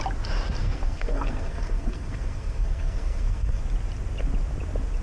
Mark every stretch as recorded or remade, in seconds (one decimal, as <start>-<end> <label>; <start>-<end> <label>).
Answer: 0.0-0.6 recorded; 0.6-3.6 remade; 3.6-5.0 recorded